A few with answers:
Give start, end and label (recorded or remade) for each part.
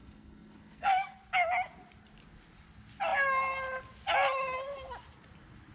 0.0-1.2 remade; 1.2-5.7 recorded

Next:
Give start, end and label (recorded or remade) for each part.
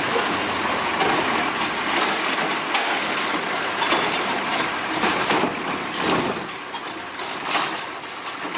0.0-8.6 recorded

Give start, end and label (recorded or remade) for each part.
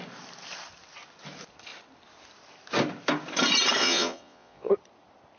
0.0-3.8 recorded; 3.8-4.7 remade; 4.7-5.4 recorded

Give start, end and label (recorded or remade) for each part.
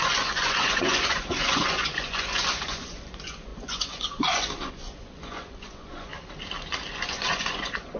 0.0-6.1 remade; 6.1-6.9 recorded; 6.9-8.0 remade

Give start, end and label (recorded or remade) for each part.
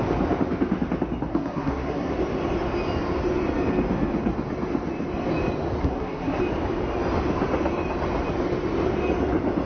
0.0-1.3 recorded; 1.3-2.1 remade; 2.1-5.8 recorded; 5.8-6.4 remade; 6.4-9.7 recorded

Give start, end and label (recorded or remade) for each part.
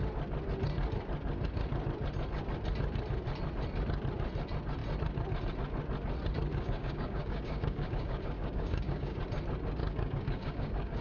0.0-6.5 recorded; 6.5-9.2 remade; 9.2-9.8 recorded; 9.8-11.0 remade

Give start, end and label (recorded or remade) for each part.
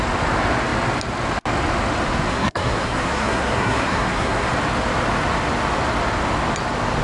0.0-2.3 recorded; 2.3-4.5 remade; 4.5-7.0 recorded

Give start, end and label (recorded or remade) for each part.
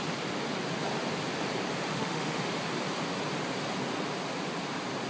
0.0-1.9 recorded; 1.9-2.4 remade; 2.4-5.1 recorded